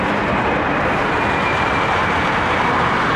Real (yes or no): no